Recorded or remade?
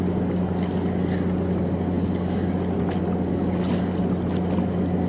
recorded